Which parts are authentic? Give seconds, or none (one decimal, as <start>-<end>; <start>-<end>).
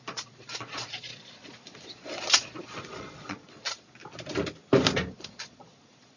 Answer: 4.0-5.1